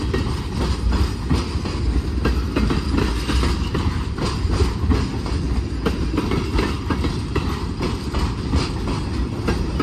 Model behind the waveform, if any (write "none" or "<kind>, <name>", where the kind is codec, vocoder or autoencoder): none